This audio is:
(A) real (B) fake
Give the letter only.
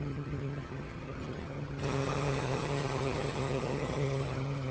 B